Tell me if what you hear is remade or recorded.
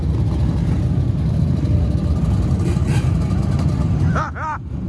recorded